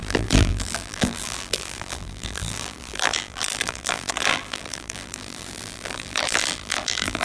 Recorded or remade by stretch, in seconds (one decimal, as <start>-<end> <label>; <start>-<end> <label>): 0.0-7.2 remade

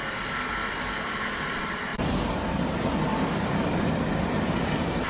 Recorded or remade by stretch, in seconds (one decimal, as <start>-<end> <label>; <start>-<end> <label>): 0.0-1.1 recorded; 1.1-5.1 remade

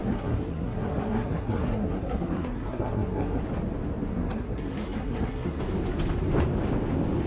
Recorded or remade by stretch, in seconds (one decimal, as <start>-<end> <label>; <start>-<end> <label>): 0.0-3.4 remade; 3.4-4.1 recorded; 4.1-5.6 remade; 5.6-7.3 recorded